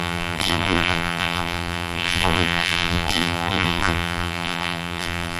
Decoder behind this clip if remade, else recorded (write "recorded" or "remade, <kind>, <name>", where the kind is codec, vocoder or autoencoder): remade, vocoder, BigVGAN v2